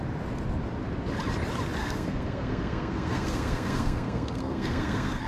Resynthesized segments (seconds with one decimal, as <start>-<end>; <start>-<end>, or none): 1.8-5.3